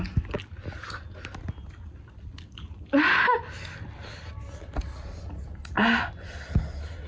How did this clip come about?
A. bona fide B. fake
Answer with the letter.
A